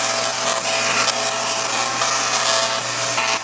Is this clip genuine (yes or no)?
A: yes